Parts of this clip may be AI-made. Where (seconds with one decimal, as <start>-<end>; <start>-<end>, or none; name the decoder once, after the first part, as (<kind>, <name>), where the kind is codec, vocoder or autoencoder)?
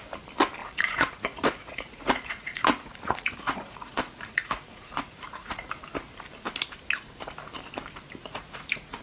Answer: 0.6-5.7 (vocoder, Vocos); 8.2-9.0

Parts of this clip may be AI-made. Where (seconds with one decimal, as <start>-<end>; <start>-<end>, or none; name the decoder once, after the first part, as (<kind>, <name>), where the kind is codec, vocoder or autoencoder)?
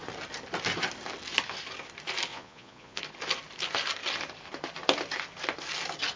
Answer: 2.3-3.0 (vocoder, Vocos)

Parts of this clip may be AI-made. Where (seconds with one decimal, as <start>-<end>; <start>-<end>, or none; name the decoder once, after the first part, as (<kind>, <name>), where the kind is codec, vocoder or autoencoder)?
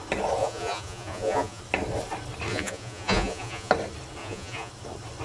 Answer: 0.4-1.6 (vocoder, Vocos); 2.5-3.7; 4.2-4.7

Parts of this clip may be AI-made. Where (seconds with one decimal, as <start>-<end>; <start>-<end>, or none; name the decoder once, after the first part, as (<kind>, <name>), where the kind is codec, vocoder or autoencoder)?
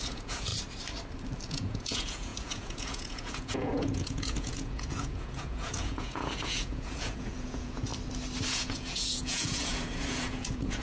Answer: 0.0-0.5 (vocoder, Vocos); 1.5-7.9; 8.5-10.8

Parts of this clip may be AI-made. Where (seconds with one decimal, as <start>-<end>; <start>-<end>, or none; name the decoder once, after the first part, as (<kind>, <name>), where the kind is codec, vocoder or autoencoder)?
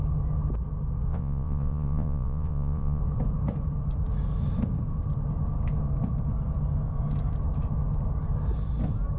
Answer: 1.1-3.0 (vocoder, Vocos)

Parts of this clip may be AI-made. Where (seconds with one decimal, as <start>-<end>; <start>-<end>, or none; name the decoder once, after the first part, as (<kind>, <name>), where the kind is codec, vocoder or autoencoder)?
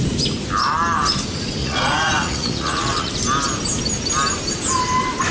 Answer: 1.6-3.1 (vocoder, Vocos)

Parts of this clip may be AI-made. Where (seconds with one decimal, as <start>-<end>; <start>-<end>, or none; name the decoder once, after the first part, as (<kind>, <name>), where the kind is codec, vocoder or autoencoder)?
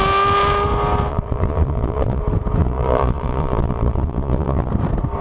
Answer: 1.1-2.2 (vocoder, Vocos); 2.6-4.7